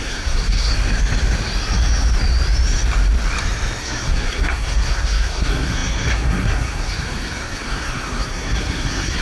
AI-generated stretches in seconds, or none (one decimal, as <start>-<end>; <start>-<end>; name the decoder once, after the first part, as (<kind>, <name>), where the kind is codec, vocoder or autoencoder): 0.0-0.7 (codec, SNAC); 3.8-9.2